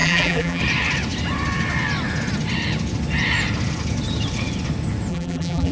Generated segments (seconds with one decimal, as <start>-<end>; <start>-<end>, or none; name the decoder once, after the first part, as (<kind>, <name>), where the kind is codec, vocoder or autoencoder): 0.0-0.6 (vocoder, BigVGAN v2); 5.1-5.7